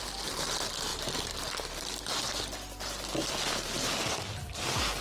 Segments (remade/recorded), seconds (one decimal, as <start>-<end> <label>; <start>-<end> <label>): 0.0-5.0 recorded